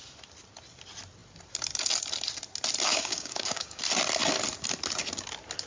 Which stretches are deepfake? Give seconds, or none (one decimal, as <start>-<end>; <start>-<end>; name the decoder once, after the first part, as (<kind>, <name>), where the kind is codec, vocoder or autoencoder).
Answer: 2.9-3.8 (codec, DAC)

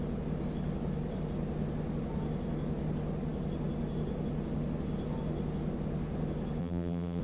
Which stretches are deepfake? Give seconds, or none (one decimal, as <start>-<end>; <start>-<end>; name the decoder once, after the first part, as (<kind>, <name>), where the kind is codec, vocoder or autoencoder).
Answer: 6.6-7.2 (vocoder, BigVGAN v2)

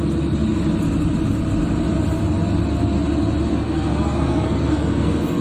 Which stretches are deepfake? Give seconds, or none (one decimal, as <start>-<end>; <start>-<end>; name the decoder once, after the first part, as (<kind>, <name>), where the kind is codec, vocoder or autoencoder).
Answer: 3.5-5.4 (codec, SNAC)

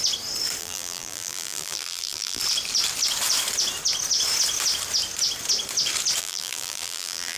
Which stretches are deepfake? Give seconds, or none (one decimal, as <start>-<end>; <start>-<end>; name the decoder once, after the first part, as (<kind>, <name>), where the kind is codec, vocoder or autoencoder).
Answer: 0.6-2.4 (vocoder, BigVGAN v2); 6.2-7.4

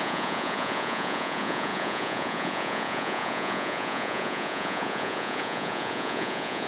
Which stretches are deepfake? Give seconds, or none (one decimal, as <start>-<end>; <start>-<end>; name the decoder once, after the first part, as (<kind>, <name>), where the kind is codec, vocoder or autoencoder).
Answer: 0.0-6.7 (vocoder, Vocos)